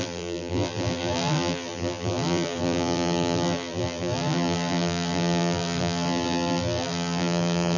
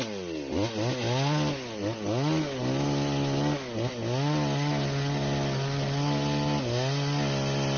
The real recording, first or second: second